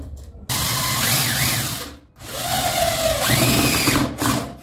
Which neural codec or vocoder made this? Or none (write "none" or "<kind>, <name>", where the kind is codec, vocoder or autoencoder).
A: none